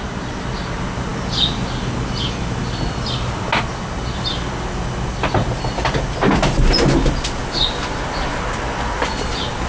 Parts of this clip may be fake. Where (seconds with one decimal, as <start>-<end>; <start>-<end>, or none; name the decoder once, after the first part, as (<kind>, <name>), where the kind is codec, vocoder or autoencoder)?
none